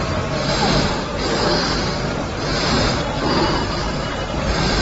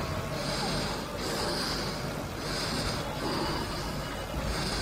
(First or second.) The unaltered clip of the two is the second